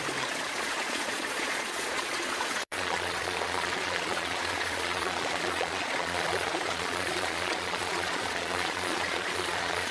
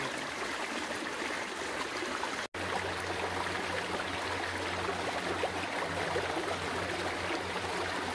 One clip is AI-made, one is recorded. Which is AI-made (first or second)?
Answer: first